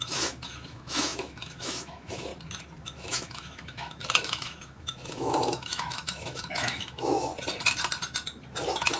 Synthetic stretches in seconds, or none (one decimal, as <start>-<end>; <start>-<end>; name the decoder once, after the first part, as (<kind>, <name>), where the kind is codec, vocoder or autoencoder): 0.0-2.3 (autoencoder, DAC-VAE); 2.8-7.3

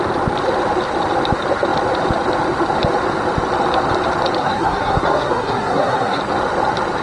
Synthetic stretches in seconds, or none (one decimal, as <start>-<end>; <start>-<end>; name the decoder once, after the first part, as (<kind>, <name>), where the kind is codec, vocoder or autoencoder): 4.4-6.2 (codec, SNAC)